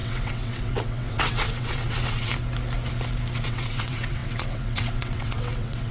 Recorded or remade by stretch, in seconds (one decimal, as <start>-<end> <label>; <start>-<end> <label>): 0.0-2.3 remade; 2.3-3.4 recorded; 3.4-5.9 remade